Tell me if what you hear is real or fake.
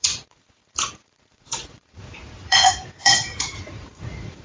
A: fake